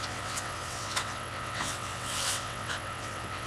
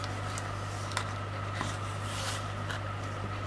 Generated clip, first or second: first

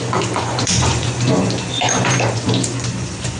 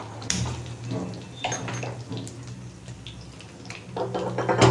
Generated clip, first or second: first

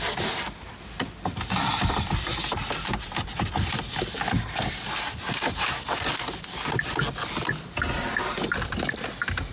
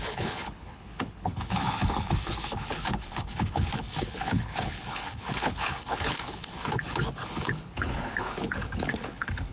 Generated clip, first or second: second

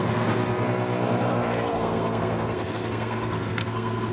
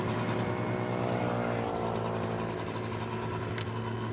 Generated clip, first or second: first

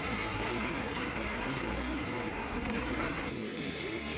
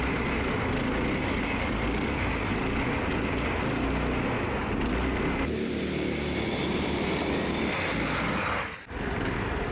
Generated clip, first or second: first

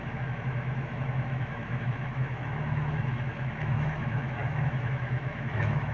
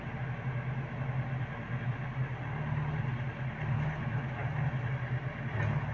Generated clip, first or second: first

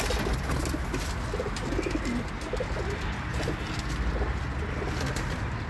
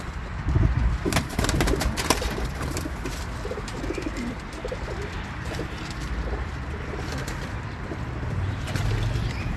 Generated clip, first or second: second